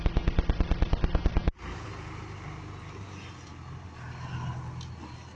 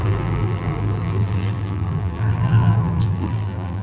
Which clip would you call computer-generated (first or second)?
second